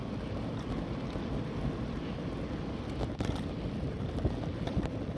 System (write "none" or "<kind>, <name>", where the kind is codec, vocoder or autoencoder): vocoder, BigVGAN v2